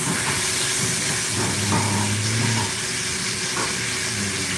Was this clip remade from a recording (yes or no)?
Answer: no